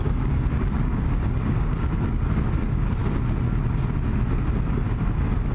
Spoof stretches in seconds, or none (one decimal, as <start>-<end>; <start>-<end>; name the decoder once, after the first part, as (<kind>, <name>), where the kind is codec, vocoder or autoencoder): 0.0-3.0 (codec, DAC); 4.3-5.5